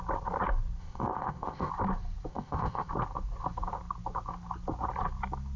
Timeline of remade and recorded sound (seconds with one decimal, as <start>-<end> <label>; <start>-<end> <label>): 0.0-0.8 recorded; 0.8-1.7 remade; 1.7-2.3 recorded; 2.3-2.9 remade; 2.9-5.6 recorded